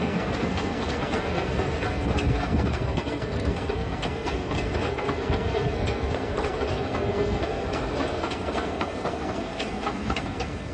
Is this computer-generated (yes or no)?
yes